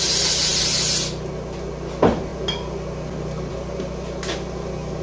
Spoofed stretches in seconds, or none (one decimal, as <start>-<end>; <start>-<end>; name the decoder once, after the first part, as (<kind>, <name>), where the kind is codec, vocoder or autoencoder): none